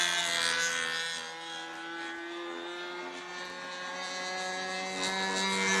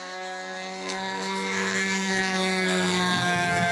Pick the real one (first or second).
first